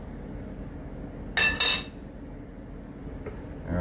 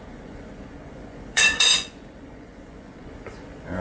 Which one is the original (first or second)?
first